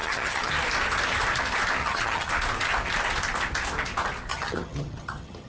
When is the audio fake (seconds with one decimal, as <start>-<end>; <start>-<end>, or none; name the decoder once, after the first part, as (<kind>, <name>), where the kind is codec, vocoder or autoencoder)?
0.0-0.5 (vocoder, HiFi-GAN); 1.8-2.3; 4.3-5.5